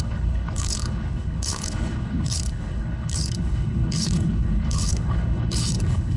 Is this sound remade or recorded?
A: remade